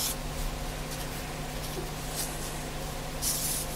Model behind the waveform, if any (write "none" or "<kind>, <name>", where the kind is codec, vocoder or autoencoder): none